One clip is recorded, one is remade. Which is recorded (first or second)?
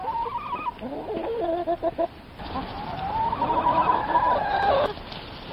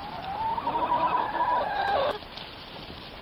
first